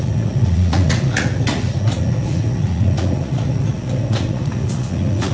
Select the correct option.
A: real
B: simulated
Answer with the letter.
B